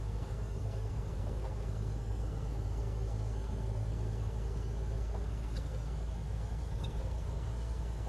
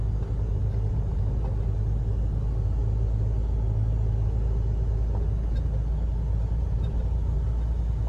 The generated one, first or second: first